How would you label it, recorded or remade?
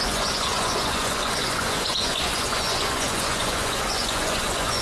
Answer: remade